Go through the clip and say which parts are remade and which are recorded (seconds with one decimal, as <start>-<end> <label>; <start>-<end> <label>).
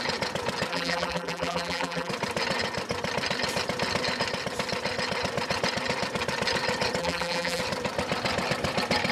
0.0-0.7 recorded; 0.7-2.1 remade; 2.1-7.0 recorded; 7.0-7.6 remade; 7.6-9.1 recorded